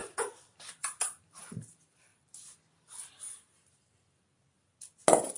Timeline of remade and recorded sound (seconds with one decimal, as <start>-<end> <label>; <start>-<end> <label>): 0.0-1.4 remade; 1.4-5.4 recorded